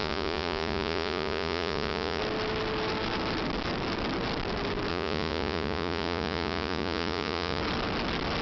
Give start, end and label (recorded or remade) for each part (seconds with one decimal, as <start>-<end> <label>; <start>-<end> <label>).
0.0-2.2 remade; 2.2-4.9 recorded; 4.9-7.6 remade; 7.6-8.4 recorded